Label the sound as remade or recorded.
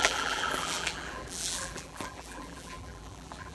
remade